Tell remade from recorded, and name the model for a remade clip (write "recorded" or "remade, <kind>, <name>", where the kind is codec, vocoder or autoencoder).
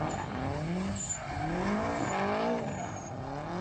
recorded